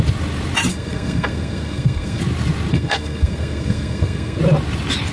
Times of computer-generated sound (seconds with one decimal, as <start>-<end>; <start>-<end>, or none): 0.7-2.2; 2.7-4.4